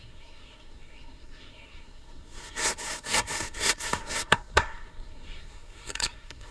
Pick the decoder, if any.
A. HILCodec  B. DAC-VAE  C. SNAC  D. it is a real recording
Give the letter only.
C